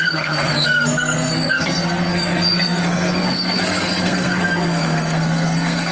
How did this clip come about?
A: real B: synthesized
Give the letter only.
B